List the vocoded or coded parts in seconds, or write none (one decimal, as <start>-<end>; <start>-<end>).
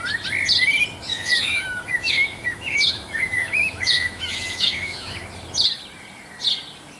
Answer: 1.1-5.3